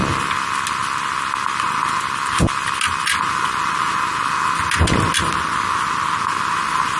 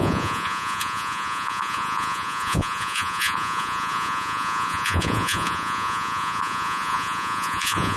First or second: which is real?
first